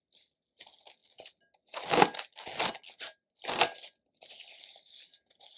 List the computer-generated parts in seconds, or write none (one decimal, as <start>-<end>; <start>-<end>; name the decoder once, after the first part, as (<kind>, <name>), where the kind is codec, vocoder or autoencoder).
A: none